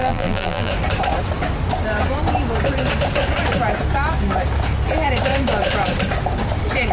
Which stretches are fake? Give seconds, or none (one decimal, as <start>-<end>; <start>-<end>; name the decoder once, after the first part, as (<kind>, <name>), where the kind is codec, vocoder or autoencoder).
0.0-0.7 (vocoder, BigVGAN v2)